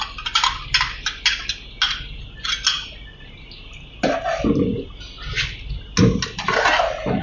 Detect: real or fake real